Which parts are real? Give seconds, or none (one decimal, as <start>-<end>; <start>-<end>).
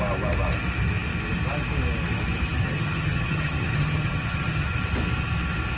0.0-2.6; 4.7-5.8